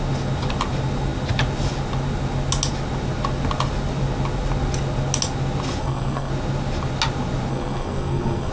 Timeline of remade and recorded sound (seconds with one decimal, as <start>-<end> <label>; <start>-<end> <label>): 0.0-5.8 recorded; 5.8-6.3 remade; 6.3-7.5 recorded; 7.5-8.5 remade